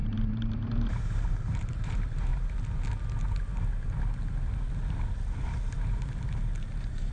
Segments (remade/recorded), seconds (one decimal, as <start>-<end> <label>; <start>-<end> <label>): 0.0-2.3 remade; 2.3-6.6 recorded; 6.6-7.1 remade